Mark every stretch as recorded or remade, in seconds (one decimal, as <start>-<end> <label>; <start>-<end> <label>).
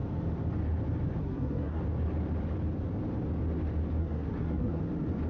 0.0-1.2 recorded; 1.2-1.8 remade; 1.8-4.0 recorded; 4.0-4.8 remade; 4.8-5.3 recorded